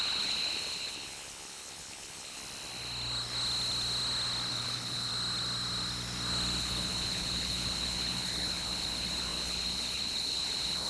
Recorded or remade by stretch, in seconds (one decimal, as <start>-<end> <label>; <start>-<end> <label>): 0.0-2.4 remade; 2.4-4.5 recorded; 4.5-5.1 remade; 5.1-6.6 recorded; 6.6-10.9 remade